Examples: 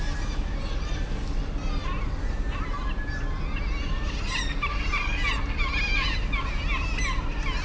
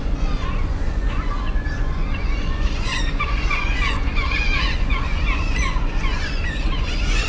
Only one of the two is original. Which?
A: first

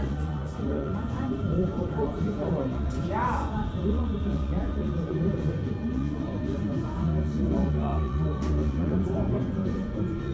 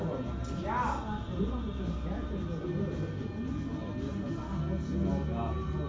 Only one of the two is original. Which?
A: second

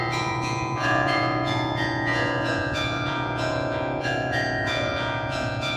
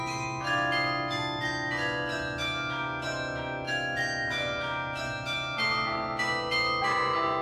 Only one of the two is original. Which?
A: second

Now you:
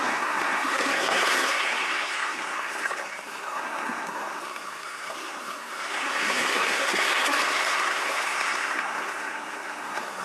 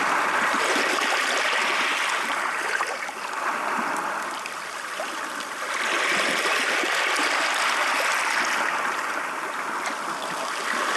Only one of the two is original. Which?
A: second